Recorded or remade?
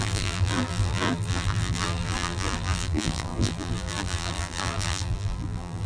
remade